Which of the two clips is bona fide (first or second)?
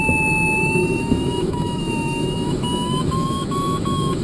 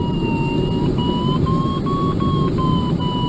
second